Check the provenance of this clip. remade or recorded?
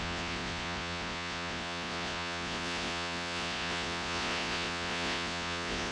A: remade